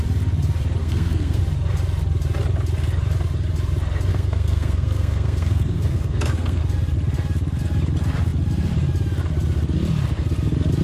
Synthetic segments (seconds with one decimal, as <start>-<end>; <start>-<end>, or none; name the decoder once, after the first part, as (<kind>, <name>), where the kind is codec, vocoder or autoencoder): 0.8-1.4 (codec, SNAC); 4.1-6.6